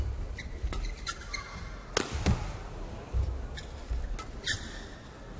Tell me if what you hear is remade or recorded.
recorded